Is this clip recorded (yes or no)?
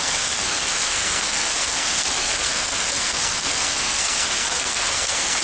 no